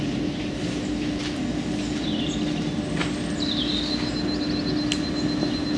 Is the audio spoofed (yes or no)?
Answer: no